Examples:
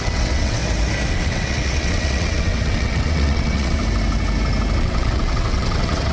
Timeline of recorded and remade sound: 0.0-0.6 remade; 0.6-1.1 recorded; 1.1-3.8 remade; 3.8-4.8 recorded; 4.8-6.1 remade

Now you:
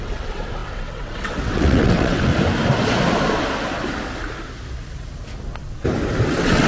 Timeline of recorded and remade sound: 0.0-2.3 remade; 2.3-6.3 recorded; 6.3-6.7 remade

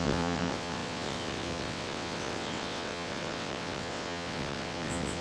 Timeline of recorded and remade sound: 0.0-5.2 remade

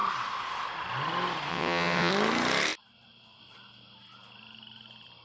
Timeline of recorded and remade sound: 0.0-1.5 recorded; 1.5-2.1 remade; 2.1-5.2 recorded